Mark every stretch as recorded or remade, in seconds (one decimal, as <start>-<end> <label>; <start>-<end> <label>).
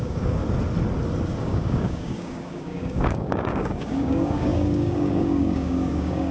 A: 0.0-0.4 remade; 0.4-1.4 recorded; 1.4-6.3 remade